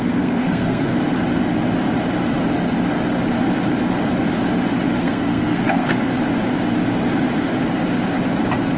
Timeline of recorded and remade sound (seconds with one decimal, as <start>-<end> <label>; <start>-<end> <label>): 0.0-0.9 remade; 0.9-5.0 recorded; 5.0-6.1 remade; 6.1-8.8 recorded